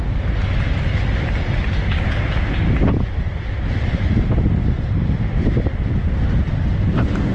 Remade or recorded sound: remade